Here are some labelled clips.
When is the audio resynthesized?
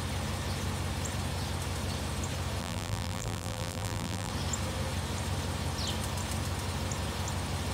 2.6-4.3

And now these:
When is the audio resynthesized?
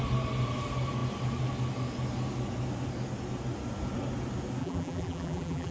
4.6-5.7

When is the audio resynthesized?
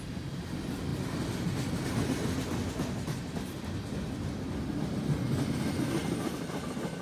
6.0-7.0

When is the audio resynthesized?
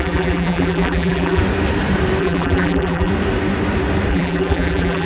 0.0-1.4; 2.2-3.1; 4.1-5.1